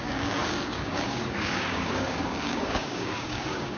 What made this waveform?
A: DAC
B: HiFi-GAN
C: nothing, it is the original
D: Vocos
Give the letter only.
A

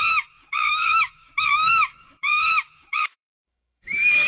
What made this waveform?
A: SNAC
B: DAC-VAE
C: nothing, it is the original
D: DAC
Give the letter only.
D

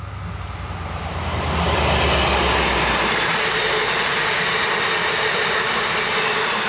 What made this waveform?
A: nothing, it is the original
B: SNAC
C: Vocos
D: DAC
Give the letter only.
A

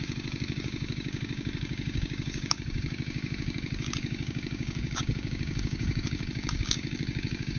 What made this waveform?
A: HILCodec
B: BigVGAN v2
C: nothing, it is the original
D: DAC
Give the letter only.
D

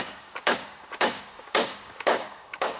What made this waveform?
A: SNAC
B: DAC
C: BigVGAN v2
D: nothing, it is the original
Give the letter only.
B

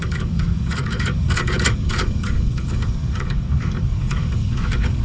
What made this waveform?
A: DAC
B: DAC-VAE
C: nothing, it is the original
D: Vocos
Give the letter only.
A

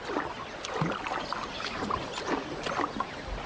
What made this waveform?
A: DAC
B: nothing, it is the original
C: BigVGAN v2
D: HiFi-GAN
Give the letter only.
B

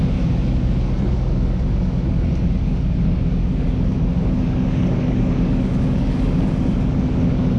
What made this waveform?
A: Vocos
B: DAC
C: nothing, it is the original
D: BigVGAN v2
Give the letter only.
B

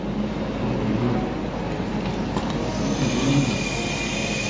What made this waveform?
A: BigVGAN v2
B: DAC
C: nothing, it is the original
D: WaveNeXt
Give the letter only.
C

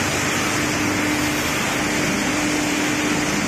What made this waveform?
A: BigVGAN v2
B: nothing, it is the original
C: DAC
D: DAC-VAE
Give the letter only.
B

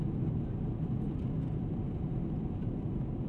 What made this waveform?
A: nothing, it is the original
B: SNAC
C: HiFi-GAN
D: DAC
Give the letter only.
A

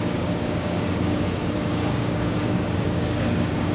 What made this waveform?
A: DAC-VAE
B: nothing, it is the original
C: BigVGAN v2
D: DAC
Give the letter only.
D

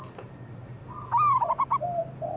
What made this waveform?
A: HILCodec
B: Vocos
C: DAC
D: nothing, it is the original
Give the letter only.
D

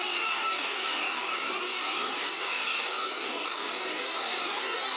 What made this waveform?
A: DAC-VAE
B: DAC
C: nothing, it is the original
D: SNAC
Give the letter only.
B